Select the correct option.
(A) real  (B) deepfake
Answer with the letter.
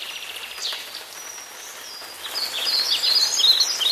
A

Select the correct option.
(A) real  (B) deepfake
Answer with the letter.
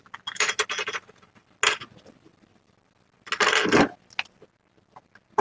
A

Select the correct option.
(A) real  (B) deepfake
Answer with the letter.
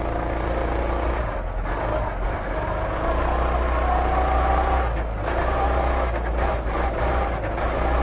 A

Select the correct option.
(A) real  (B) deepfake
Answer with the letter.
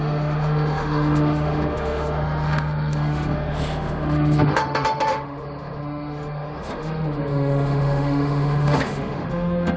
B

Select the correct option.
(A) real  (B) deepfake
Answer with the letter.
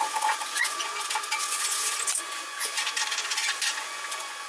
B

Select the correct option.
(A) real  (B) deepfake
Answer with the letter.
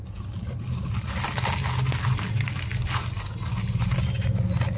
A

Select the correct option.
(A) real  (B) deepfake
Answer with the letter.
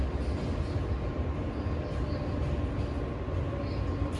A